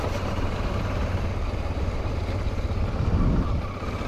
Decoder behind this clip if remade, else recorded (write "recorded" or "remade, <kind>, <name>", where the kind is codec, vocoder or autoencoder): recorded